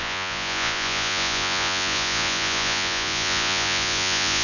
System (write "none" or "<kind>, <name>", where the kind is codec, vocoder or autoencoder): vocoder, Vocos